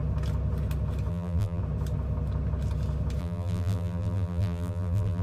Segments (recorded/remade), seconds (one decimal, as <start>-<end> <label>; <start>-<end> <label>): 0.0-1.1 recorded; 1.1-1.6 remade; 1.6-3.2 recorded; 3.2-5.2 remade